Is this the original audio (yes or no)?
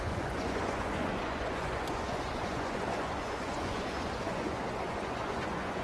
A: no